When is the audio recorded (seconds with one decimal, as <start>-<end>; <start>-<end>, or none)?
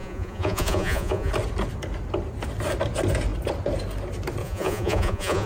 1.3-4.4